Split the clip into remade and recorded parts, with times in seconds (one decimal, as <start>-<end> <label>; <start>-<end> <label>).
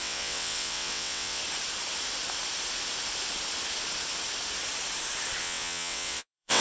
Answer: 0.0-1.4 remade; 1.4-5.4 recorded; 5.4-6.6 remade